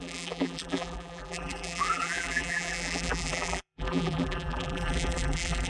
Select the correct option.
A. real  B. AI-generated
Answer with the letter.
B